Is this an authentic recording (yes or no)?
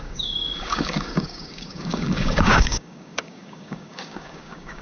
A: no